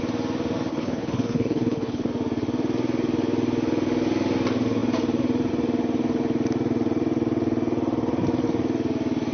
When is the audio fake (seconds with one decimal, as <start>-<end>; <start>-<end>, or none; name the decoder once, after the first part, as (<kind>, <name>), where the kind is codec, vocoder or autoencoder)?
0.7-2.1 (codec, HILCodec)